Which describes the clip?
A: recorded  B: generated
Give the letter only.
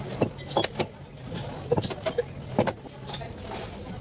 A